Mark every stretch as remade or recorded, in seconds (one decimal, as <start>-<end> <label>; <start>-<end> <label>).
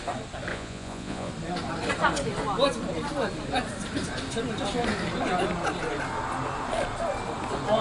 0.0-0.5 recorded; 0.5-1.3 remade; 1.3-7.8 recorded